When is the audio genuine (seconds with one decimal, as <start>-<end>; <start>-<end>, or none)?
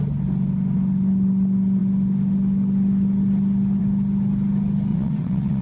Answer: 0.0-4.9